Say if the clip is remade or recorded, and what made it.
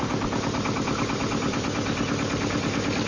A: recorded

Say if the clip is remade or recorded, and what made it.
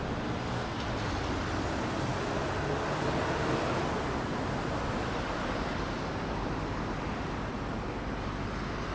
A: recorded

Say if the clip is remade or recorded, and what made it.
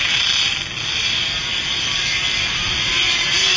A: recorded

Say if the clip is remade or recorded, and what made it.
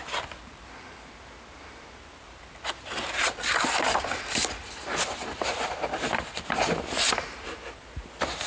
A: recorded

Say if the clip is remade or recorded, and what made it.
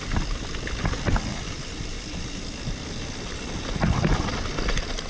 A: recorded